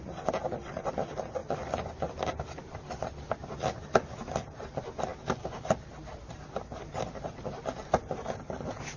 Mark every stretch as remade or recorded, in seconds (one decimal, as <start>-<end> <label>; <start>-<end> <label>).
0.0-9.0 recorded